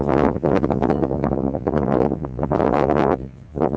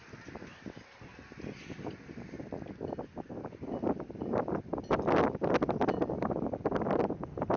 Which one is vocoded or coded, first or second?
first